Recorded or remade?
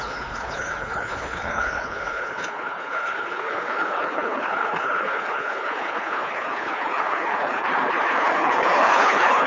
remade